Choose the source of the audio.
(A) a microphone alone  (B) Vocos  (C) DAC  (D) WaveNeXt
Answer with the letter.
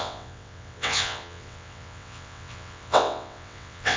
D